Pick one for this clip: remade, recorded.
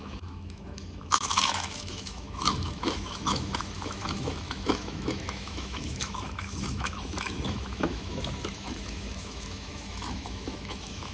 remade